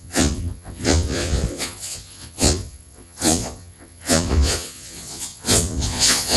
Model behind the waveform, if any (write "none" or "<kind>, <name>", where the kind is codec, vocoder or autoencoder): vocoder, Vocos